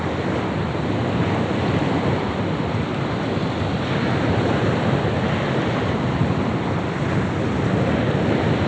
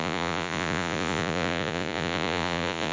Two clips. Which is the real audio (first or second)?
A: first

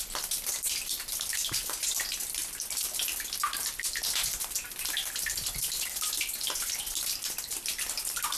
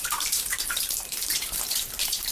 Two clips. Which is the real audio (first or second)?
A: first